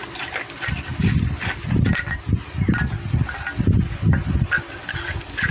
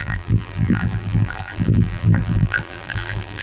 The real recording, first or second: first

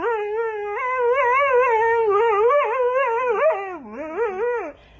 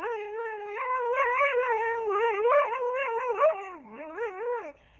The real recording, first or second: first